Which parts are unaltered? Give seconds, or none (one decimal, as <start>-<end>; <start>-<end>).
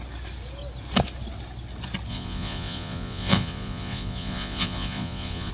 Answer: 0.0-2.1